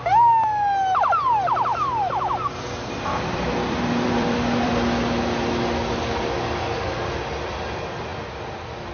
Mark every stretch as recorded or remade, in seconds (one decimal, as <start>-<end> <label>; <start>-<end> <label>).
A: 0.0-1.7 recorded; 1.7-4.7 remade; 4.7-8.9 recorded